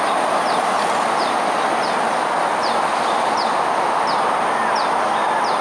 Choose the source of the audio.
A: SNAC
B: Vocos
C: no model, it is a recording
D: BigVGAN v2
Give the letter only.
D